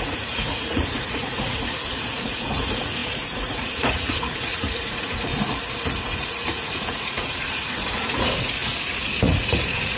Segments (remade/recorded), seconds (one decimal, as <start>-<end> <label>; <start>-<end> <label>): 0.0-5.3 remade; 5.3-6.0 recorded; 6.0-10.0 remade